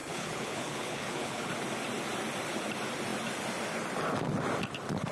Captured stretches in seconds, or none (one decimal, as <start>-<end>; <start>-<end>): 1.5-5.1